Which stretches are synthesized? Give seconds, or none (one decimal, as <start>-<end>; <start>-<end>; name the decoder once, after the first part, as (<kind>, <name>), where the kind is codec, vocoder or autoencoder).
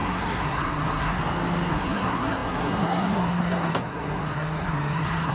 0.0-1.2 (codec, SNAC); 1.7-5.3